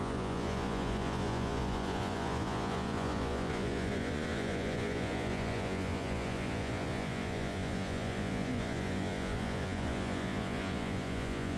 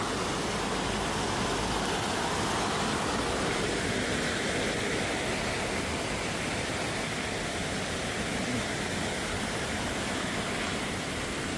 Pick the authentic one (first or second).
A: second